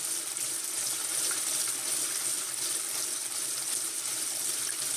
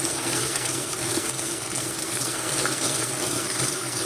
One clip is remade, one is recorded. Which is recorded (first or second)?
first